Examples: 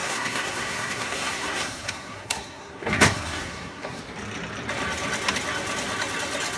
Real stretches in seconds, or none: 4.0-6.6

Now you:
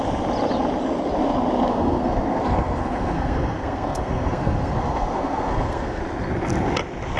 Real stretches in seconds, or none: 0.0-1.7; 6.0-7.2

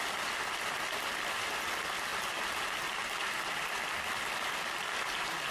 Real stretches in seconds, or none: 0.0-5.5